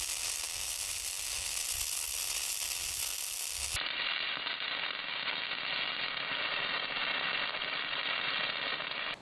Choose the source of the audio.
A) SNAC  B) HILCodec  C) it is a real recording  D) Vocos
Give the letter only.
C